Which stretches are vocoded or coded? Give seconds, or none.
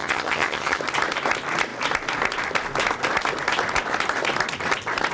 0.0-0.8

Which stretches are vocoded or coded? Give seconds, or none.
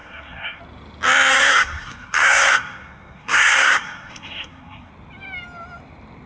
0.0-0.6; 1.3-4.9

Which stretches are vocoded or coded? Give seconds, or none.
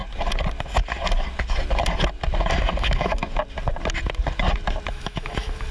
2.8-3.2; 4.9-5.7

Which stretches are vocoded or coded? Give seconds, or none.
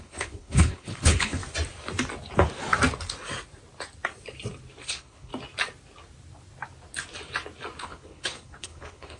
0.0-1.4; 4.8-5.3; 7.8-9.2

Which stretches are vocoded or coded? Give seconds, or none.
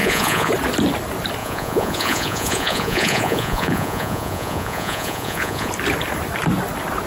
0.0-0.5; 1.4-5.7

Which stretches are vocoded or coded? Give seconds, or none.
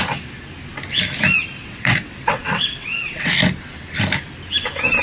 1.6-3.3